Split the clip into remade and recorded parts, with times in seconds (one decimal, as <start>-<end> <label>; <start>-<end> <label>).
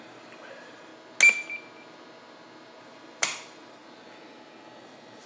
0.0-0.9 remade; 0.9-2.8 recorded; 2.8-3.8 remade; 3.8-4.8 recorded; 4.8-5.3 remade